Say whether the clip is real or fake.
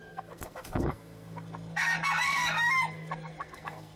fake